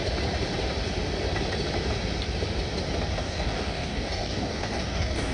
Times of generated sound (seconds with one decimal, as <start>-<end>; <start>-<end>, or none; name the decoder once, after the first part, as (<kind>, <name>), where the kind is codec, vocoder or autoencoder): 3.2-5.3 (codec, DAC)

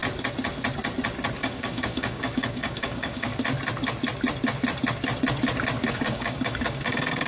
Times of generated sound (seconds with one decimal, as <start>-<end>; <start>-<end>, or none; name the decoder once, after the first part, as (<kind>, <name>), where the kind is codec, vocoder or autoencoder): 1.4-3.3 (codec, DAC); 5.9-7.3